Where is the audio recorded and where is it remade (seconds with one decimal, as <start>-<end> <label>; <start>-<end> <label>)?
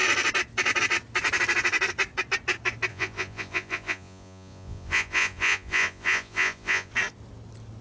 0.0-2.9 recorded; 2.9-6.9 remade; 6.9-7.8 recorded